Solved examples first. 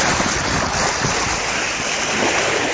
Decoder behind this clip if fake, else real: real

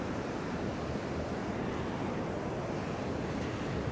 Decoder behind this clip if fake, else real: real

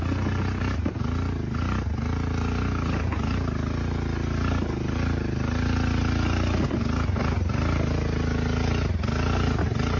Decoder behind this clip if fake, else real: real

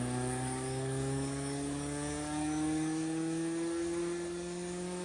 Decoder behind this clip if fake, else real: fake, codec, DAC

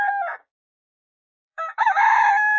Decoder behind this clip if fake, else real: fake, codec, DAC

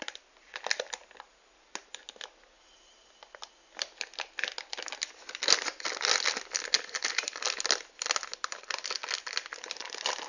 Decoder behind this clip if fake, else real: real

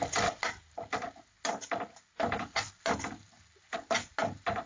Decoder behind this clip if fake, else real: real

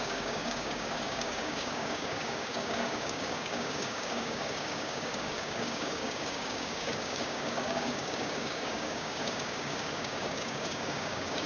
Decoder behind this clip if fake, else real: fake, codec, DAC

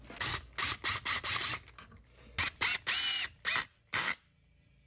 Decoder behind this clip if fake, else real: real